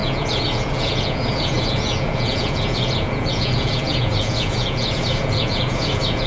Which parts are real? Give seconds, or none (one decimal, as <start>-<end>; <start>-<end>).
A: none